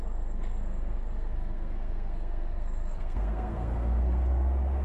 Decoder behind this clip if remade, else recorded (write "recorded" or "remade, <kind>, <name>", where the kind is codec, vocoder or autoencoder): remade, codec, SNAC